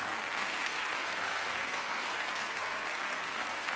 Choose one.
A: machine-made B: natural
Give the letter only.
A